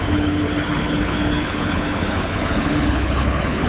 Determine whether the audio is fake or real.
fake